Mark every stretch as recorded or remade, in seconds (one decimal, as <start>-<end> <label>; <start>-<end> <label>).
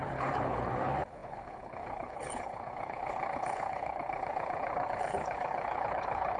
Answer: 0.0-6.4 remade